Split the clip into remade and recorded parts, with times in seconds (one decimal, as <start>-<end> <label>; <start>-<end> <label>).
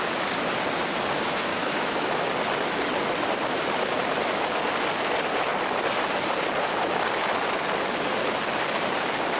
0.0-1.5 recorded; 1.5-2.3 remade; 2.3-9.4 recorded